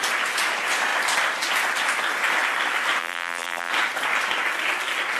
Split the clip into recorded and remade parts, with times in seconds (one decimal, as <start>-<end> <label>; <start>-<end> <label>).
0.0-3.0 recorded; 3.0-3.7 remade; 3.7-5.2 recorded